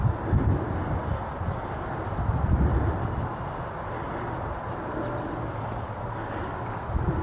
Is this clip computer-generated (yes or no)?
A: no